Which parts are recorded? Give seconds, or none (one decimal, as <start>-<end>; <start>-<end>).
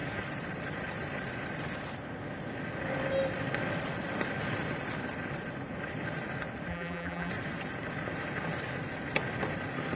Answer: 0.0-6.7; 7.3-10.0